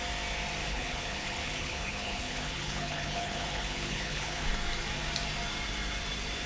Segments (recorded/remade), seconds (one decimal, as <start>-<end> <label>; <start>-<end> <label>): 0.0-0.6 recorded; 0.6-4.5 remade; 4.5-6.5 recorded